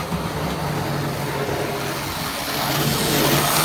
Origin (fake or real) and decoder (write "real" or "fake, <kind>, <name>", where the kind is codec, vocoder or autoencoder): real